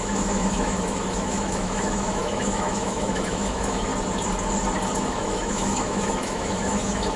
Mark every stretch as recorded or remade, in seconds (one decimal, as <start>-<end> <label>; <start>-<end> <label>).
0.0-3.9 remade; 3.9-5.1 recorded; 5.1-7.2 remade